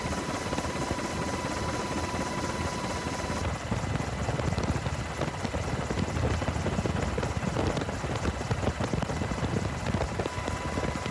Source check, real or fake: real